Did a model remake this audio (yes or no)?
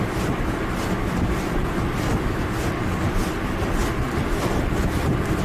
no